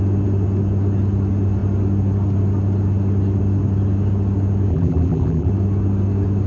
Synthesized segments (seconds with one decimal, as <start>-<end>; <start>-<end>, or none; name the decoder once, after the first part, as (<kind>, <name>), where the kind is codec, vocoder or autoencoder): 4.7-5.5 (vocoder, BigVGAN v2)